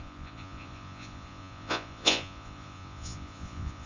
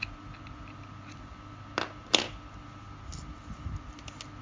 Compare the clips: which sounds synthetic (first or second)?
first